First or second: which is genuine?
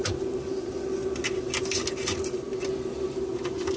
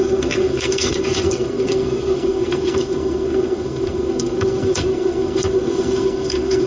first